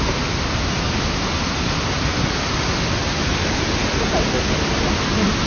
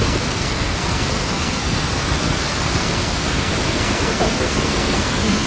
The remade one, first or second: second